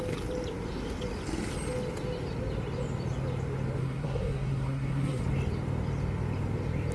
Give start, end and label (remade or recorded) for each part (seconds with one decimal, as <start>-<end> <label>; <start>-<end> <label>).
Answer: 0.0-3.8 recorded; 3.8-5.2 remade; 5.2-6.9 recorded